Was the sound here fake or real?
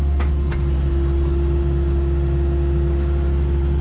real